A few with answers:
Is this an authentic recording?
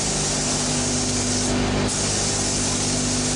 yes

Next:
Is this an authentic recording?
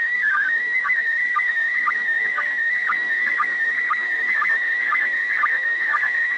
no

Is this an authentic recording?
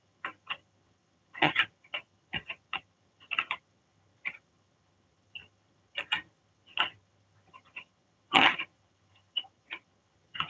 no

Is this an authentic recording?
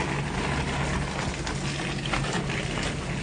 yes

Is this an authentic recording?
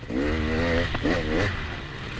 yes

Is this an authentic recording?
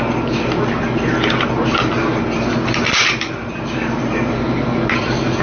yes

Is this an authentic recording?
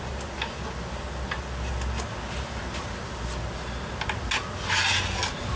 yes